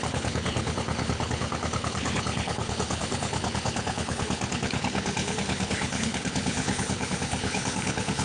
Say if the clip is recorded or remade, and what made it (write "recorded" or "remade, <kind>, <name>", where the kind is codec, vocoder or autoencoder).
remade, codec, HILCodec